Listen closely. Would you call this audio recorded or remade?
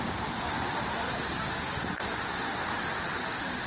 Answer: recorded